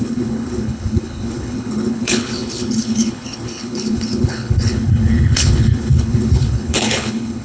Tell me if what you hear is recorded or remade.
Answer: remade